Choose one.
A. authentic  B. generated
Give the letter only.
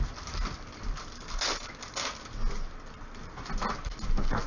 A